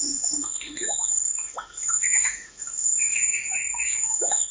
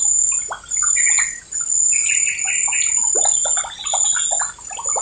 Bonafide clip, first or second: second